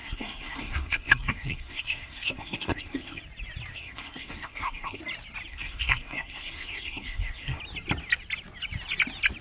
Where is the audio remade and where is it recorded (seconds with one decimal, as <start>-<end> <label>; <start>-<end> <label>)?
0.0-3.2 remade; 3.2-3.7 recorded; 3.7-5.0 remade; 5.0-5.5 recorded; 5.5-7.6 remade; 7.6-9.4 recorded